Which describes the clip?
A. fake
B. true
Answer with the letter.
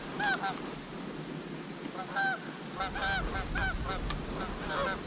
B